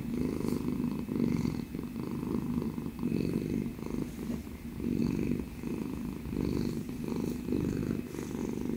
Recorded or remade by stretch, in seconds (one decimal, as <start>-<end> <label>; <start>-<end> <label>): 0.0-3.7 remade; 3.7-4.3 recorded; 4.3-5.0 remade; 5.0-5.7 recorded; 5.7-8.8 remade